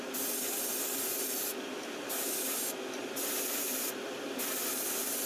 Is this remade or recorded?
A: recorded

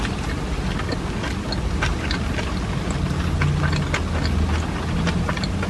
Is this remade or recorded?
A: recorded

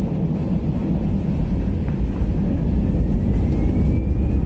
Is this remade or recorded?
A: recorded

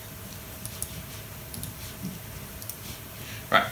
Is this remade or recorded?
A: recorded